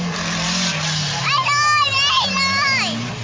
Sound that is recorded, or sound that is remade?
recorded